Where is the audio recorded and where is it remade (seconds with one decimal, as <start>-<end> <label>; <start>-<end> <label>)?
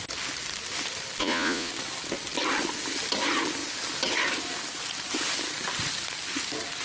0.0-1.2 recorded; 1.2-1.7 remade; 1.7-6.8 recorded